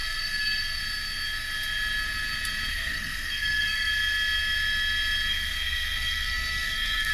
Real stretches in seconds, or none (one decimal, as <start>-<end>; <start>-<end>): 0.8-2.7; 3.9-5.3